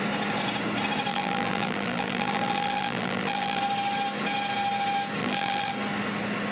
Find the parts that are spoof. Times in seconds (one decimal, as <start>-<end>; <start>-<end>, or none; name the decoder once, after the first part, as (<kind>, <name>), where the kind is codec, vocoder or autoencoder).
1.1-3.6 (vocoder, BigVGAN v2); 5.2-5.7